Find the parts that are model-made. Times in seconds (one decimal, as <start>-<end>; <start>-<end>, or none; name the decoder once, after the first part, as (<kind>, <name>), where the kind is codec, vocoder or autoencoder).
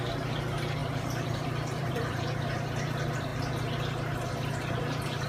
0.8-2.1 (vocoder, BigVGAN v2)